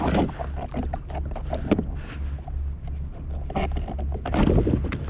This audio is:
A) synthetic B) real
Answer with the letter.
B